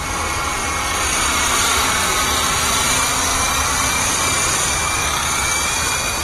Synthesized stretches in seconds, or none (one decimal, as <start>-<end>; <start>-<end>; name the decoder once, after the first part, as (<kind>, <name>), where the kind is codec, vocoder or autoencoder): 0.0-2.1 (vocoder, BigVGAN v2); 2.7-6.2